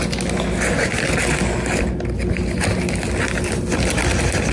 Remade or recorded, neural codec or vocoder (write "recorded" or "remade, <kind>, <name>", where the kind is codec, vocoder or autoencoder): recorded